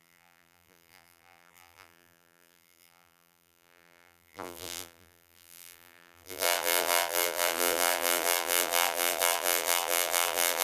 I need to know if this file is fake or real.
fake